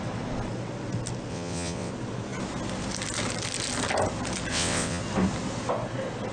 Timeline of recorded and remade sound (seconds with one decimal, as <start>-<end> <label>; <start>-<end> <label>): 0.0-1.3 recorded; 1.3-1.9 remade; 1.9-4.5 recorded; 4.5-5.0 remade; 5.0-6.3 recorded